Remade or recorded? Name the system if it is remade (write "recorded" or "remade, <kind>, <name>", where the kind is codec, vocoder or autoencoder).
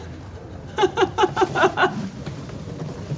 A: recorded